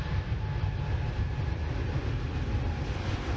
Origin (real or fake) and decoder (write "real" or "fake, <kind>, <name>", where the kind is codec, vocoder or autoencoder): real